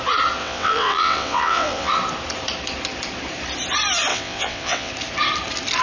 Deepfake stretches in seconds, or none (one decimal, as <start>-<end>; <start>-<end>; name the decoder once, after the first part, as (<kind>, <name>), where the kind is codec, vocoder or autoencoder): 0.4-1.9 (vocoder, WaveNeXt); 4.1-4.9